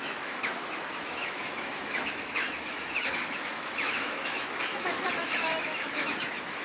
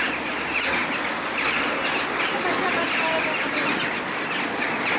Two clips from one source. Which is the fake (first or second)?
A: first